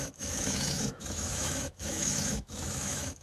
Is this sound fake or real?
fake